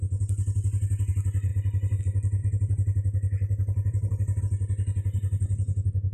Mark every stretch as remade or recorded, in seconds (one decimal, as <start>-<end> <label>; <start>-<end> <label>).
0.0-2.4 recorded; 2.4-4.4 remade; 4.4-6.1 recorded